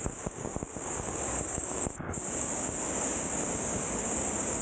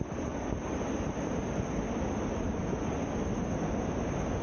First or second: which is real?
second